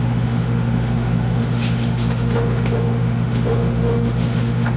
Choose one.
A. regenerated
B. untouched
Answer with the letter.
A